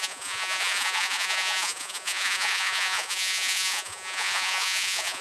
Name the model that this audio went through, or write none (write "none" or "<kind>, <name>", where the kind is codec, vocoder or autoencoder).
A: vocoder, Vocos